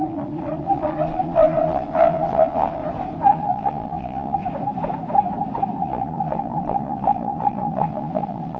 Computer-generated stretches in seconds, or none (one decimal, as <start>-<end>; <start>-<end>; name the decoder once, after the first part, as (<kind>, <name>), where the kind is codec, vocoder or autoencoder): 0.0-2.8 (vocoder, Vocos); 3.3-4.4; 5.8-8.6